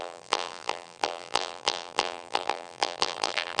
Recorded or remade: remade